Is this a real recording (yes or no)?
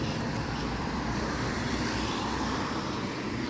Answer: no